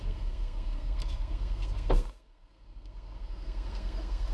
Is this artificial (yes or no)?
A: yes